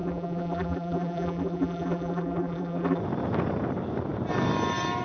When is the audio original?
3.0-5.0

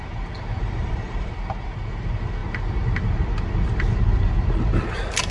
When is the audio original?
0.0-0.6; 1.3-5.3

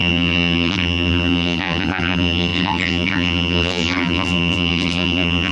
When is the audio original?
none

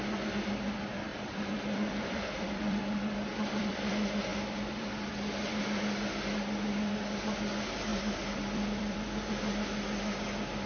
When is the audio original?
0.0-1.1; 2.8-3.3; 3.9-4.3; 5.1-7.9; 9.3-10.7

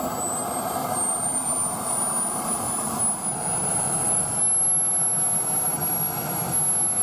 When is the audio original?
0.0-0.8; 3.0-3.7; 4.4-7.0